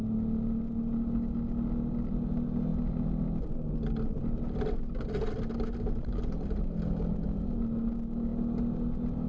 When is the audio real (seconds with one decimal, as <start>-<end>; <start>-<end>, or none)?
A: 0.0-9.3